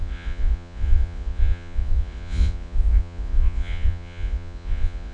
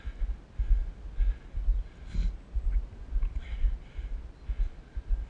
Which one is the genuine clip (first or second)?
second